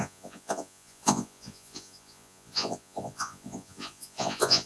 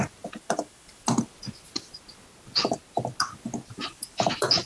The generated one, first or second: first